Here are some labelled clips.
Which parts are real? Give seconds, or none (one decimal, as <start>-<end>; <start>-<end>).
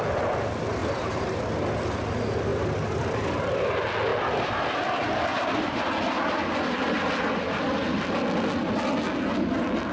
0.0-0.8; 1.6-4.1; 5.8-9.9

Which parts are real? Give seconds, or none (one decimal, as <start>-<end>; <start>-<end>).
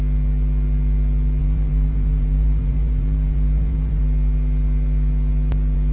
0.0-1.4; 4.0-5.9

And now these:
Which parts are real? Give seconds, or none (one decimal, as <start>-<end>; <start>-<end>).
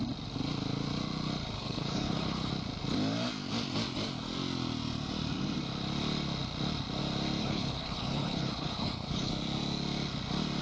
0.0-1.6; 2.5-7.4; 9.3-10.6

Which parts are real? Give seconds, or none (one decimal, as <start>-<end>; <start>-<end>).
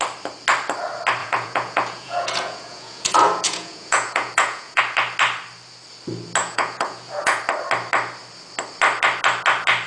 0.0-1.2; 4.8-6.4; 7.4-9.9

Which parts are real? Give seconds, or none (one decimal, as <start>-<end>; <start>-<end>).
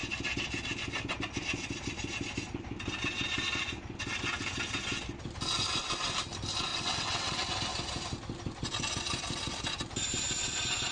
0.0-6.7; 7.5-10.9